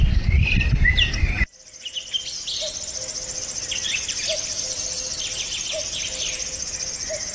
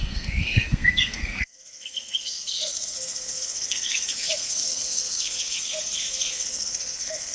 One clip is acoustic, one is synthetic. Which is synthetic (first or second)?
second